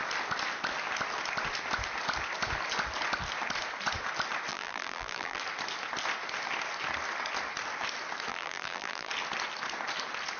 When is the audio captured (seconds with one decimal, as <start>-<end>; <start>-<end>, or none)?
0.0-4.5; 5.4-8.3; 9.1-10.4